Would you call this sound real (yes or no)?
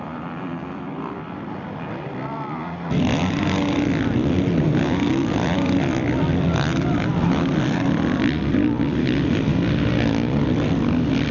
yes